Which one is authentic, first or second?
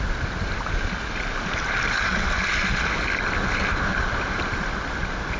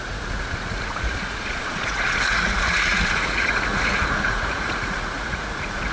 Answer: first